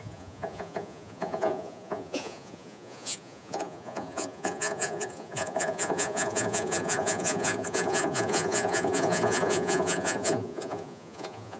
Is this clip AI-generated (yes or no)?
yes